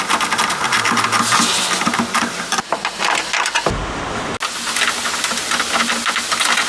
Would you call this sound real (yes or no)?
yes